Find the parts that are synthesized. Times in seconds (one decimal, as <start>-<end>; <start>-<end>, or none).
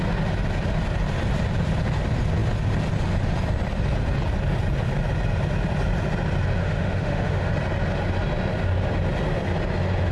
6.6-7.5